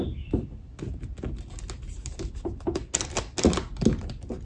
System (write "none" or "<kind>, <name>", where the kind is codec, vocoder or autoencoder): none